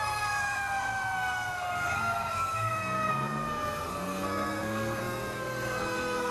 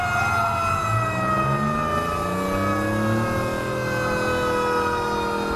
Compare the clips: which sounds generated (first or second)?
first